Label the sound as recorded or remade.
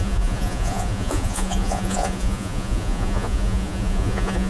remade